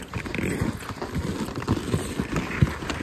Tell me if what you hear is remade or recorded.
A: remade